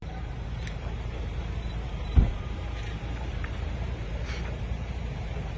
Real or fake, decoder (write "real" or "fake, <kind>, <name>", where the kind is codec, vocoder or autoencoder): fake, vocoder, BigVGAN v2